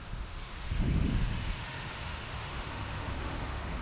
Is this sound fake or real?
fake